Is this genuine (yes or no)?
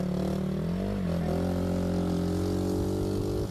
yes